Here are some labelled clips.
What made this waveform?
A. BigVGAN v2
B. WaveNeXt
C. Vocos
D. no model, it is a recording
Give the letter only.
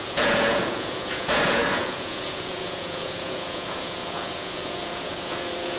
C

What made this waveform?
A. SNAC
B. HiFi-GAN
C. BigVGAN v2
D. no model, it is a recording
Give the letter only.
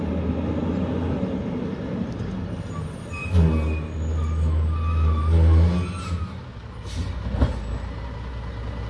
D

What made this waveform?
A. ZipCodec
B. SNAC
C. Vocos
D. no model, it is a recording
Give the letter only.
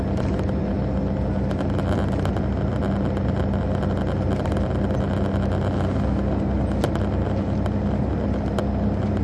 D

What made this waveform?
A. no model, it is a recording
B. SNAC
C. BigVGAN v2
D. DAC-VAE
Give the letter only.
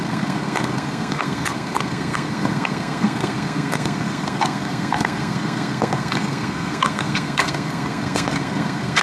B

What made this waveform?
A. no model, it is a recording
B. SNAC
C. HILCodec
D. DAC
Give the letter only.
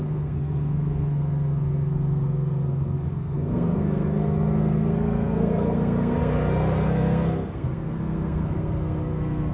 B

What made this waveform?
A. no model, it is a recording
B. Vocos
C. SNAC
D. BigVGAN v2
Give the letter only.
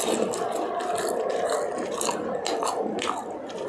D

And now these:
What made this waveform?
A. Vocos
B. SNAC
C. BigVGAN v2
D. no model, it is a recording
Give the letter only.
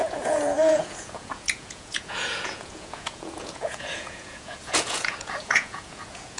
A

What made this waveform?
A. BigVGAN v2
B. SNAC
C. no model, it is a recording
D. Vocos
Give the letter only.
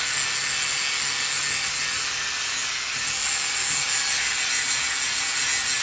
C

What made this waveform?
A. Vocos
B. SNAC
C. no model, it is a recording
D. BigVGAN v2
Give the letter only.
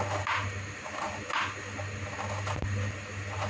C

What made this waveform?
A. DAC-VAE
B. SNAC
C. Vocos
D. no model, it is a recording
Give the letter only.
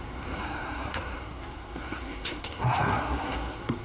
B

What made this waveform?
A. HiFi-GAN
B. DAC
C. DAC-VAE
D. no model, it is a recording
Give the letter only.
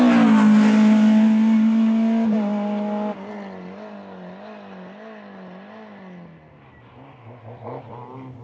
D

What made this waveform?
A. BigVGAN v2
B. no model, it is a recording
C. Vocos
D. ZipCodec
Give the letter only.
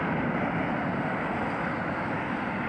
B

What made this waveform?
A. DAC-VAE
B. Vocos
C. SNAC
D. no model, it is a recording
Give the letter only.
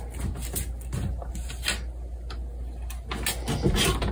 D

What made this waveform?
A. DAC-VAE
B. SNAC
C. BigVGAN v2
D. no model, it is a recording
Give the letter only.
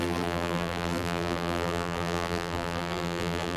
C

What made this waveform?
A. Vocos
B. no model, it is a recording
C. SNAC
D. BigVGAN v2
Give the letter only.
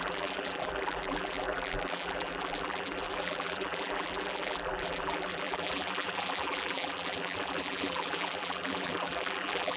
D